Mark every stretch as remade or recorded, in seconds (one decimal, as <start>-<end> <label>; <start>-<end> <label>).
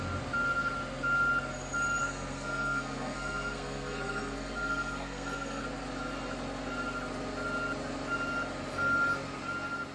0.0-2.0 recorded; 2.0-5.6 remade; 5.6-9.9 recorded